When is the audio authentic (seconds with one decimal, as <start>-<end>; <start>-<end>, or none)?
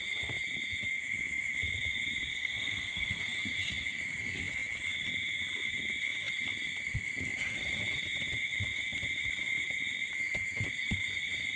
0.0-2.3; 3.2-11.6